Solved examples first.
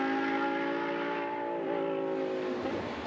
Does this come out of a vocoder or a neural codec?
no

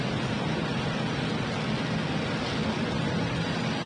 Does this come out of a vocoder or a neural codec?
no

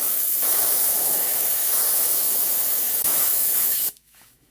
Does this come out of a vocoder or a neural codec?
yes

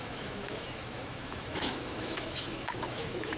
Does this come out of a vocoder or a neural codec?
yes